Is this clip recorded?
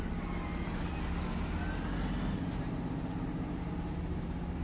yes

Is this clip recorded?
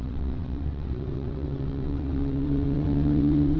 no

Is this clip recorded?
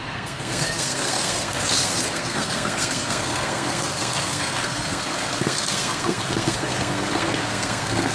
no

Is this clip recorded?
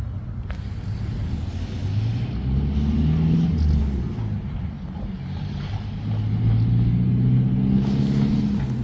yes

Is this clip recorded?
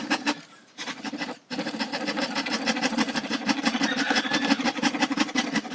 no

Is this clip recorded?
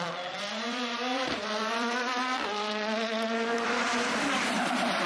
no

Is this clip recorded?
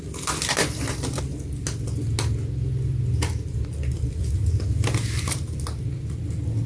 yes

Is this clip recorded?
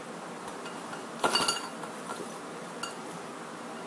yes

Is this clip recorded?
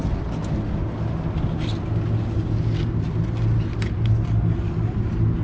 yes